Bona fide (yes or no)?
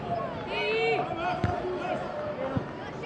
yes